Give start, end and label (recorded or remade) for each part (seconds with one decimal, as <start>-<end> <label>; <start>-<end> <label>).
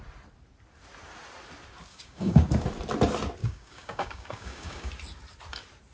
0.0-1.9 recorded; 1.9-2.5 remade; 2.5-3.4 recorded; 3.4-4.9 remade; 4.9-5.9 recorded